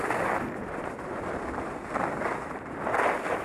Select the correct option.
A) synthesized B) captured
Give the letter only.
B